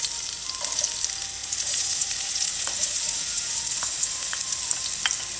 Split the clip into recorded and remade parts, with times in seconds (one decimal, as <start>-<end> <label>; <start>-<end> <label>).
0.0-1.4 recorded; 1.4-4.6 remade; 4.6-5.4 recorded